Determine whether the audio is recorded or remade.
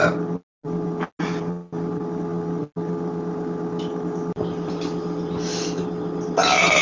recorded